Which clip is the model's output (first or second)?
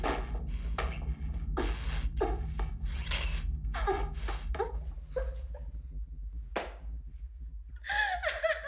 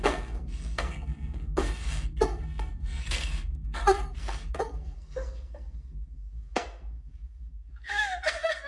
second